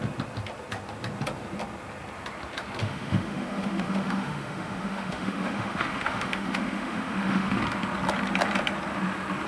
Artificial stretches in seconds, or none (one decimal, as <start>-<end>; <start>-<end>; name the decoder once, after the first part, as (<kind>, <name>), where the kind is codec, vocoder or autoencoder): 2.8-7.6 (autoencoder, DAC-VAE)